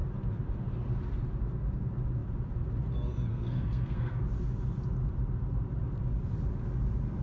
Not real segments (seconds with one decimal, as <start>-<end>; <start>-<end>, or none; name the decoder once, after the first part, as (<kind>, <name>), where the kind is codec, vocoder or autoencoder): 3.3-4.2 (codec, SNAC)